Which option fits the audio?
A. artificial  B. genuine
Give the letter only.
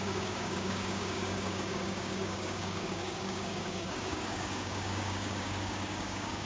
A